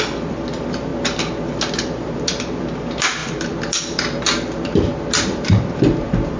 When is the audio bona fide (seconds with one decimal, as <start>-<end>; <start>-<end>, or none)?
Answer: 0.9-1.7

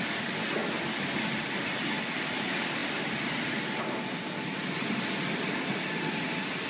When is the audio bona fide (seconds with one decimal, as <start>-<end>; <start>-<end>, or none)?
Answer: 0.0-6.7